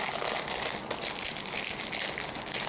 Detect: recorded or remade recorded